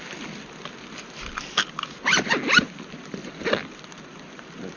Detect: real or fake real